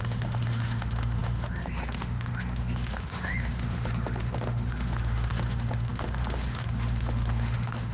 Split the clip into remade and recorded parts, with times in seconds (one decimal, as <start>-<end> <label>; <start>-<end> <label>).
0.0-7.9 remade